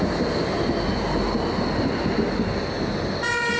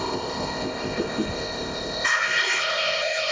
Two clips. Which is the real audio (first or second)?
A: first